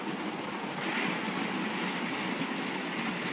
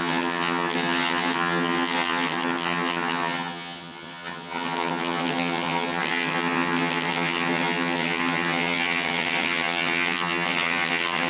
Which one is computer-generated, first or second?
second